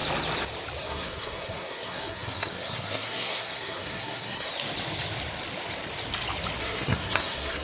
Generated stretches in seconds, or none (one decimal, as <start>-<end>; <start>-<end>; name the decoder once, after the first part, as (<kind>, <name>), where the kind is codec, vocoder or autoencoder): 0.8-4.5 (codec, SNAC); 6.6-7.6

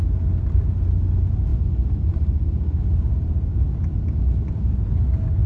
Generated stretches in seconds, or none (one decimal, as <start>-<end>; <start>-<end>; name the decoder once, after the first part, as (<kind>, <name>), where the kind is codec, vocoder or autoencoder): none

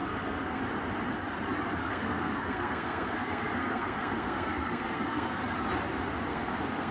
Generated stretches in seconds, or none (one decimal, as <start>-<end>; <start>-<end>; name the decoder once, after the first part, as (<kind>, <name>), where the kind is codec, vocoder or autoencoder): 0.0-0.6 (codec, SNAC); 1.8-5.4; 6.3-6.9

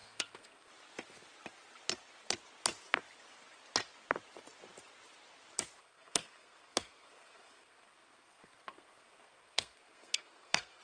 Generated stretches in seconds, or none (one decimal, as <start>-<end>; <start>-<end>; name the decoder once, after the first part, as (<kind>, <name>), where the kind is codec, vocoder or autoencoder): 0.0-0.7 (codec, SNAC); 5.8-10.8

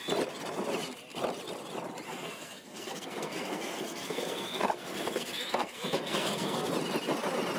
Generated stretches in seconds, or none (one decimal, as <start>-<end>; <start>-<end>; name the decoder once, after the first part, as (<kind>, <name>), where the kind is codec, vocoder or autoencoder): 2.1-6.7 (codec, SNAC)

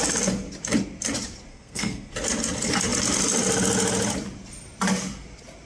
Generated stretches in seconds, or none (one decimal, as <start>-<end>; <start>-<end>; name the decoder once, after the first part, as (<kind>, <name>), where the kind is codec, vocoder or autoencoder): 1.5-2.1 (codec, SNAC)